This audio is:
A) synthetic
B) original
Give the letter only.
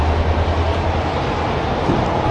B